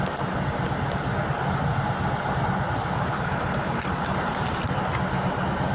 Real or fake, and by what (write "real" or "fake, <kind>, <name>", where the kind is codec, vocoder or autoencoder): real